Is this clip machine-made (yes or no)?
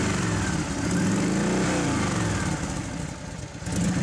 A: no